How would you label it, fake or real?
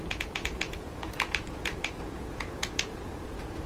fake